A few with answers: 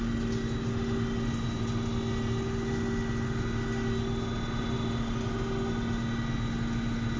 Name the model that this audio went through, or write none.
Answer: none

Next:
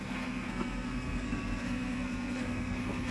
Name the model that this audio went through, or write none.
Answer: codec, SNAC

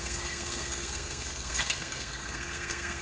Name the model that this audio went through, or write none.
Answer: codec, SNAC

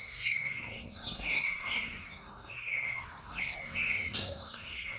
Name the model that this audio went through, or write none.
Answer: codec, SNAC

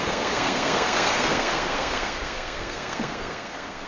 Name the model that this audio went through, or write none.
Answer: codec, SNAC